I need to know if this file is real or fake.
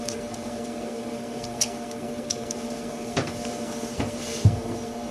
fake